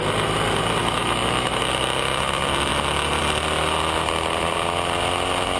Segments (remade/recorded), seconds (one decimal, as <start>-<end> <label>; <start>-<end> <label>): 0.0-0.8 recorded; 0.8-1.6 remade; 1.6-5.6 recorded